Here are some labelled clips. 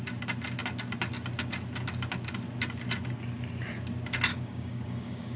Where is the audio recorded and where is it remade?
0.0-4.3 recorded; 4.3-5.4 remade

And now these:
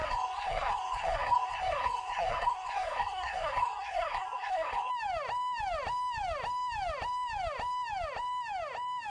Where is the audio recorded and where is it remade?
0.0-4.9 remade; 4.9-9.1 recorded